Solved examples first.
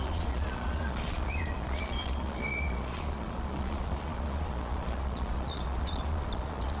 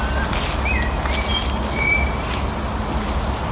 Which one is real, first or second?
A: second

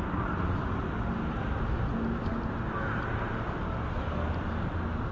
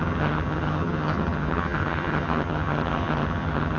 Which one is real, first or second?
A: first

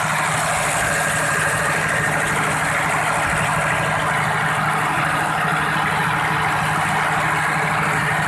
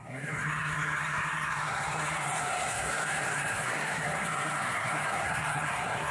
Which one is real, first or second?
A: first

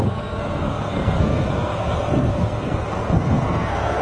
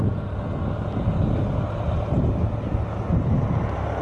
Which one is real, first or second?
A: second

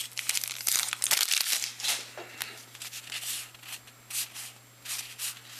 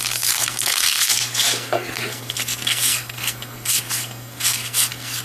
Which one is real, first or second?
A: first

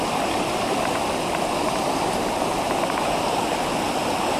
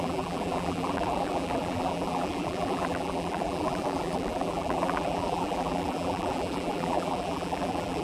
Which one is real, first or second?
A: first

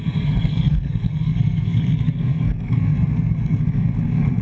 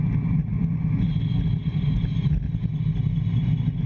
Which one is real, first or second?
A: second